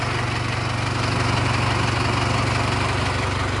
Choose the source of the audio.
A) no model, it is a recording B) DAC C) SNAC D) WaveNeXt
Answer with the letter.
A